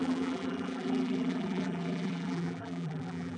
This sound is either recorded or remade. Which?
remade